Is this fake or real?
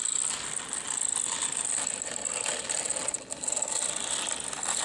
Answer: real